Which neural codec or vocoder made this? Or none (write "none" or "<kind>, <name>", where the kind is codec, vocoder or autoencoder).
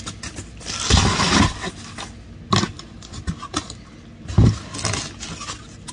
none